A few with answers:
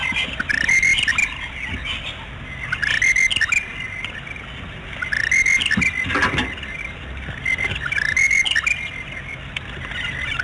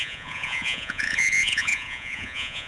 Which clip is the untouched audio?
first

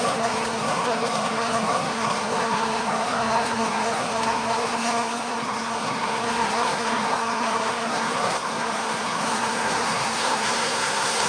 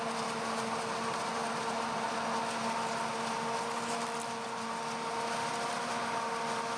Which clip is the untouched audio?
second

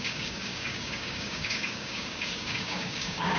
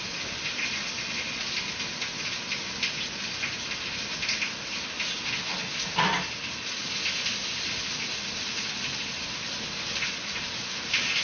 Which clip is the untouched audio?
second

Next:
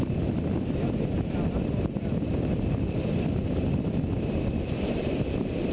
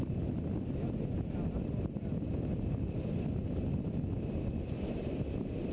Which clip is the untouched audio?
second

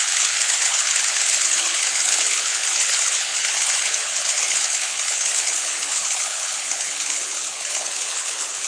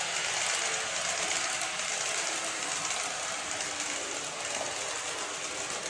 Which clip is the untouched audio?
second